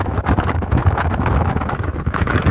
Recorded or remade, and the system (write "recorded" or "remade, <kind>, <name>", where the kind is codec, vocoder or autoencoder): remade, autoencoder, DAC-VAE